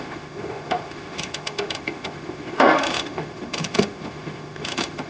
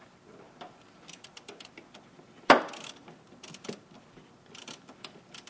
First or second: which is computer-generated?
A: first